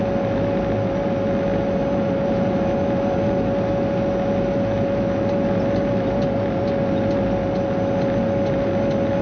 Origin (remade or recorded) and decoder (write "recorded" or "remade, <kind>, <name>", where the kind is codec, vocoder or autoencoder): recorded